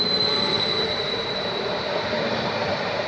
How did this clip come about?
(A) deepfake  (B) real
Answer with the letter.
A